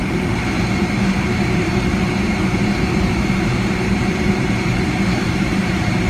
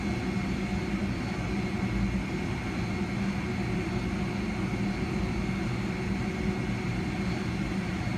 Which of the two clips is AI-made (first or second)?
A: first